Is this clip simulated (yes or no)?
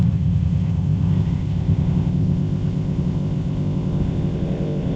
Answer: yes